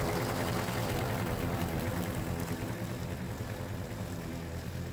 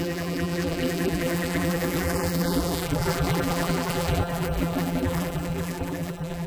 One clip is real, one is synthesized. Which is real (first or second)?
first